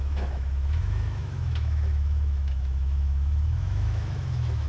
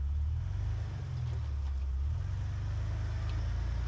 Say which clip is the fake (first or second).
first